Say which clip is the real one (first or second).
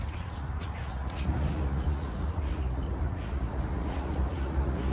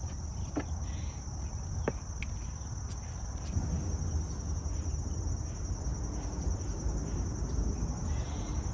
second